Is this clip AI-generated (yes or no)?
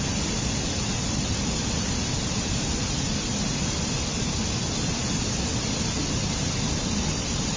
no